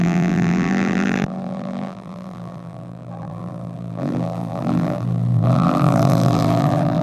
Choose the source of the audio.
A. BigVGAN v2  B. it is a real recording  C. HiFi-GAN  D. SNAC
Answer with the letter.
A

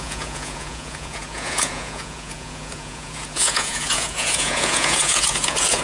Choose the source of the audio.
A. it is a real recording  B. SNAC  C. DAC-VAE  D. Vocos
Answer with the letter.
D